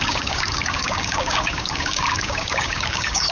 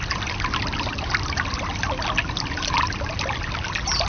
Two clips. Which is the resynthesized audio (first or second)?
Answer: first